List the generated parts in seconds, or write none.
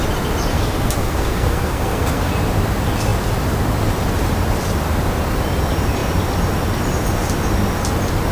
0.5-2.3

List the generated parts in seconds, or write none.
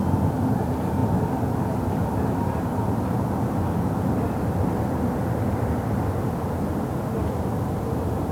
none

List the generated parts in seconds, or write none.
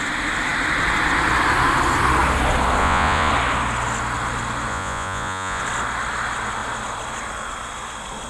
2.8-3.3; 4.7-5.6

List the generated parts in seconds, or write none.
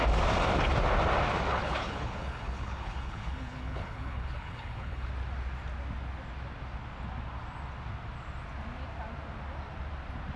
1.5-5.1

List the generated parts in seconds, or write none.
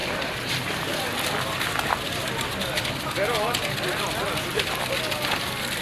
none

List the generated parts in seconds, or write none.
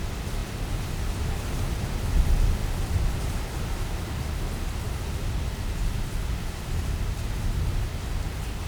none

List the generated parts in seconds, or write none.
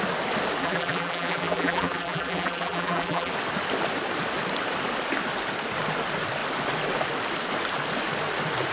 0.6-3.3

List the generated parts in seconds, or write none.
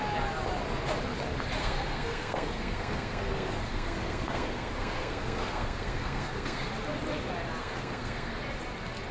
1.6-6.7; 7.6-8.4